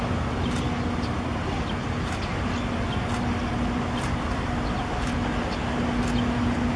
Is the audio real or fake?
real